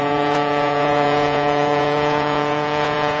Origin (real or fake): fake